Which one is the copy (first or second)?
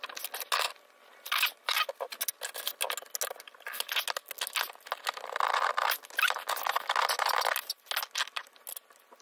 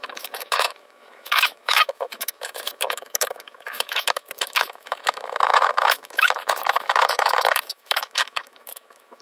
second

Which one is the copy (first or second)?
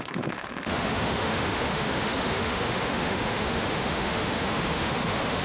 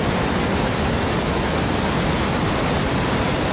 first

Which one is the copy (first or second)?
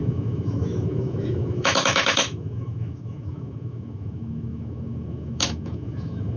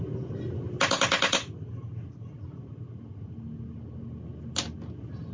first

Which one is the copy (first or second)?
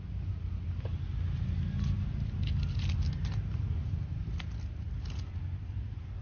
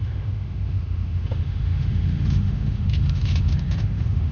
second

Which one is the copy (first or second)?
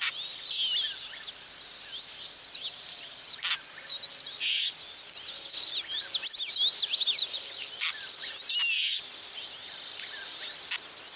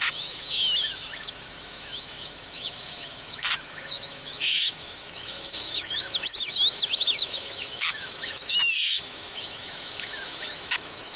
second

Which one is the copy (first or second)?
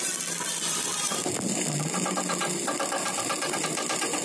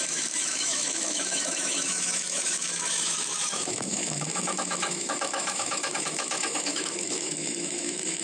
second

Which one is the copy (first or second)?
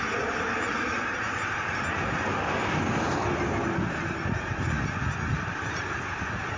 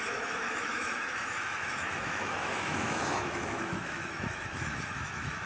second